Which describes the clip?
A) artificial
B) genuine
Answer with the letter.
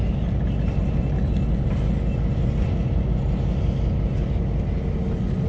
B